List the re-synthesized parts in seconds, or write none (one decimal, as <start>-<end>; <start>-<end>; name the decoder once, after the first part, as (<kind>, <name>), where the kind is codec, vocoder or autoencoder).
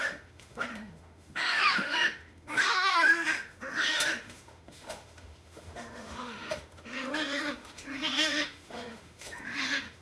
0.0-10.0 (autoencoder, DAC-VAE)